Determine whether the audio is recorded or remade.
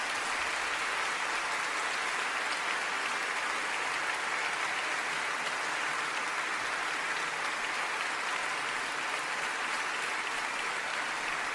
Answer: recorded